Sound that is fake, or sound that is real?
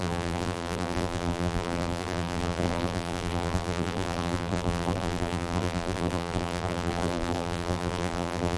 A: fake